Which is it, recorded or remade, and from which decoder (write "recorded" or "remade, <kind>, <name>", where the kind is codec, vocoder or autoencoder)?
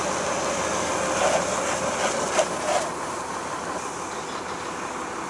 recorded